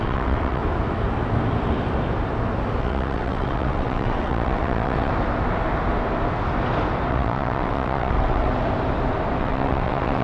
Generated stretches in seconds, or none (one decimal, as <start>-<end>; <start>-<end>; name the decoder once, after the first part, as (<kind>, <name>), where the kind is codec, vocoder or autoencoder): 0.0-0.6 (vocoder, WaveNeXt); 2.8-5.1; 7.1-8.5; 9.4-10.2